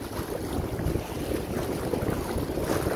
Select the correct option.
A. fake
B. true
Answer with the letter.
B